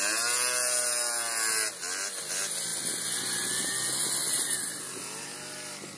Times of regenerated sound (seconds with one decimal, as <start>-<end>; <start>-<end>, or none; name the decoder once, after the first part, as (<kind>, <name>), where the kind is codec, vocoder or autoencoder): none

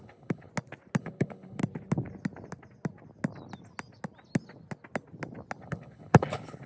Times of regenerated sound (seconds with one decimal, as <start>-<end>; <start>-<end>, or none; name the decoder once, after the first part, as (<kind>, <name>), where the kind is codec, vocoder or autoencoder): 0.0-0.5 (codec, HILCodec); 1.0-1.6; 5.6-6.7